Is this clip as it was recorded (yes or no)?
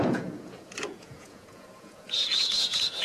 no